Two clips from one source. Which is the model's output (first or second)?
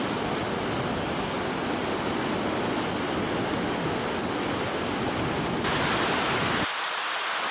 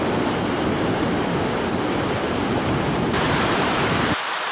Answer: second